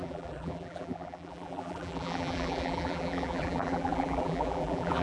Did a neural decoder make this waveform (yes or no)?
yes